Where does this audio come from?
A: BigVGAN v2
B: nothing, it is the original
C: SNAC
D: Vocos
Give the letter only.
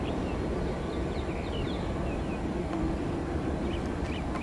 B